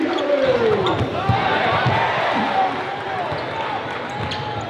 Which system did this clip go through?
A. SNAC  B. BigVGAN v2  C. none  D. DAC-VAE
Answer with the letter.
C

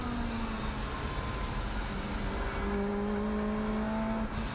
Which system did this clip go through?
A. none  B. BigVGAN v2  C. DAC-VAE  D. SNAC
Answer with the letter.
A